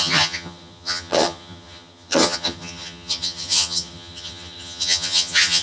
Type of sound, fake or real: fake